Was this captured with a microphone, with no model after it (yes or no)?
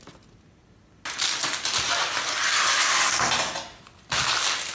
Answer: yes